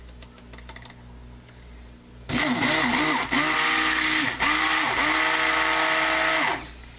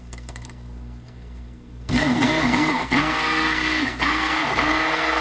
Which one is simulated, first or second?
second